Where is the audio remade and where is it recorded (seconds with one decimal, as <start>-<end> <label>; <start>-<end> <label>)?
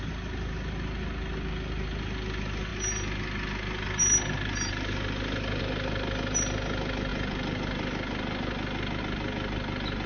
0.0-10.1 recorded